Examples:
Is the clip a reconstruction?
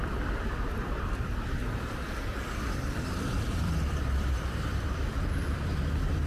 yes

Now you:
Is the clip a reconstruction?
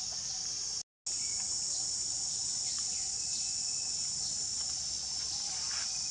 no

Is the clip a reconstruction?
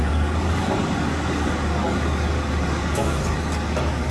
yes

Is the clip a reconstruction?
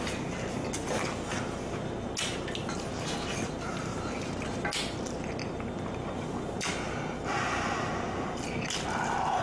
no